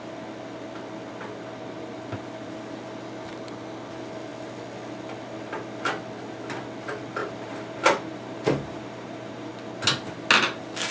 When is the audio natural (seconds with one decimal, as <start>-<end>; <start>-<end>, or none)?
0.0-7.2; 9.5-10.9